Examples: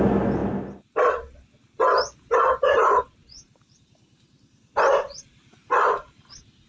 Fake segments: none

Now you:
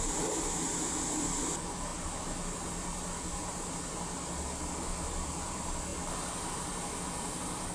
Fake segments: none

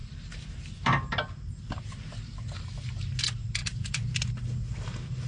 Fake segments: 3.6-4.3 (vocoder, BigVGAN v2)

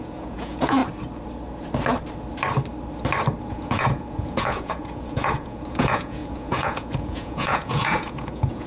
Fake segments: 0.0-0.8 (vocoder, Vocos); 3.4-8.7